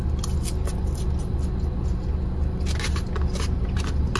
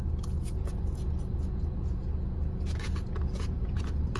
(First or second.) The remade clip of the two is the second